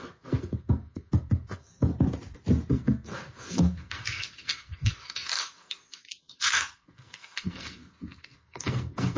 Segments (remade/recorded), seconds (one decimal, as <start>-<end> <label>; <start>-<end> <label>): 0.0-1.9 remade; 1.9-2.7 recorded; 2.7-9.2 remade